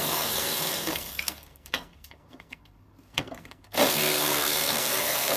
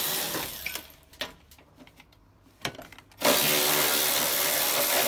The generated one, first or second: first